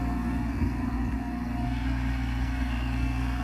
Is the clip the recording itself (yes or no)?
no